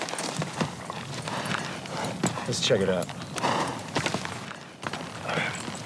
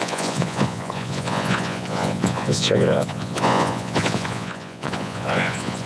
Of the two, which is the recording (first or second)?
first